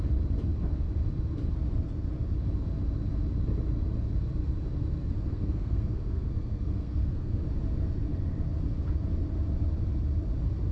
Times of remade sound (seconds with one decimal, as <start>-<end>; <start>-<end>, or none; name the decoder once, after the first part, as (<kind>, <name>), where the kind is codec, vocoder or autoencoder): 5.3-7.4 (codec, SNAC)